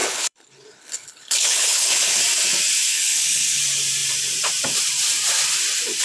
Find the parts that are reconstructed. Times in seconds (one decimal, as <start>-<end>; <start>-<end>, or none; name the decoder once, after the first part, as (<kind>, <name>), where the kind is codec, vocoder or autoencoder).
0.0-2.2 (codec, HILCodec); 2.9-3.6